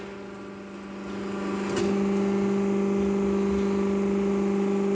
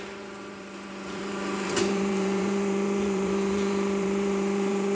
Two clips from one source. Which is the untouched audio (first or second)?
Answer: first